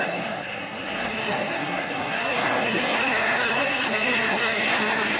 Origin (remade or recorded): remade